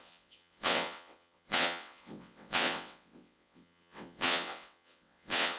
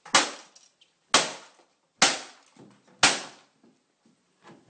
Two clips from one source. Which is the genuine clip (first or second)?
second